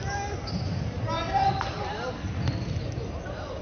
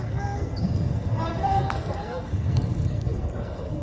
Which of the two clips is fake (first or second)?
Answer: second